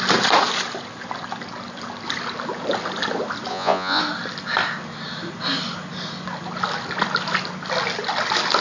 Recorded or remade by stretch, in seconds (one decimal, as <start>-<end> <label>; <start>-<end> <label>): 0.0-3.5 recorded; 3.5-4.0 remade; 4.0-8.6 recorded